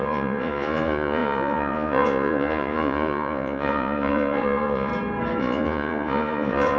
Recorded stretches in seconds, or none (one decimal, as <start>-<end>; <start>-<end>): 4.9-5.4